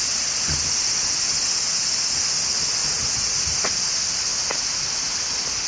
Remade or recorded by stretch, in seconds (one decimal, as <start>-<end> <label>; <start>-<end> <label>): 0.0-2.8 recorded; 2.8-3.4 remade; 3.4-5.7 recorded